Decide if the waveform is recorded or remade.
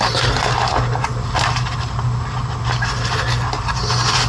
recorded